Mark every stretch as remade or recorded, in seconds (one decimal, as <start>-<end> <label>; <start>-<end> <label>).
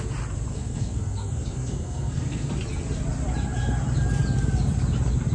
0.0-0.5 recorded; 0.5-2.5 remade; 2.5-5.3 recorded